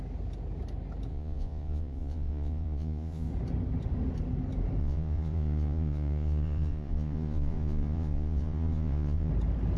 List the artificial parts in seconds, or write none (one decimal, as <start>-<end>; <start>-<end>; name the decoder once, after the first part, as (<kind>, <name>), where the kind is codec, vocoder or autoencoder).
1.1-3.3 (vocoder, Vocos); 4.8-9.3